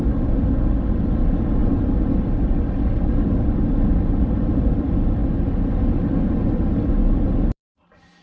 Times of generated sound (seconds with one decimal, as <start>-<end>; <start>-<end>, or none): 0.0-5.2; 6.7-8.2